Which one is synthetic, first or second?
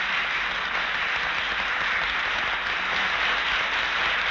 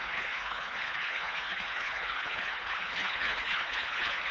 second